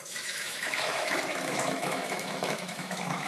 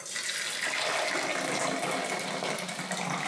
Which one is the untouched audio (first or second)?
second